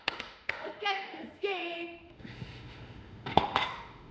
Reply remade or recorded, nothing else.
remade